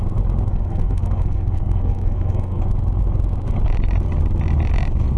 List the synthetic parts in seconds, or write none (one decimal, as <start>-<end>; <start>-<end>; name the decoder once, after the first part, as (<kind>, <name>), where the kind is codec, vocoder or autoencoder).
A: 0.5-2.6 (codec, SNAC)